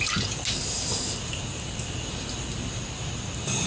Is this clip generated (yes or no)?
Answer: no